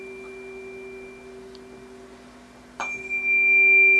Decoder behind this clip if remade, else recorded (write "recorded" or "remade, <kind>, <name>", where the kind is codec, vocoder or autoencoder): recorded